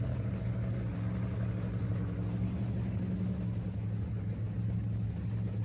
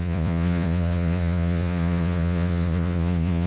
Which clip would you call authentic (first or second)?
first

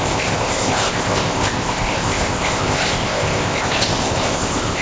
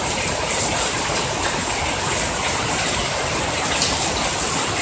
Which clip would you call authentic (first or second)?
second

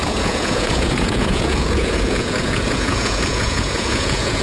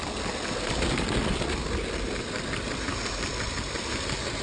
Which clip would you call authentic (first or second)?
second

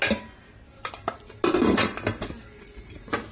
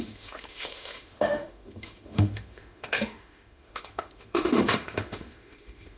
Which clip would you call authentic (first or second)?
first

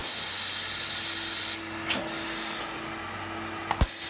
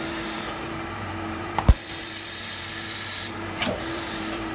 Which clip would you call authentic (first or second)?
first